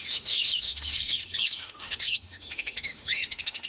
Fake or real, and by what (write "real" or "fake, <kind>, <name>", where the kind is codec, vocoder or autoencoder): fake, autoencoder, DAC-VAE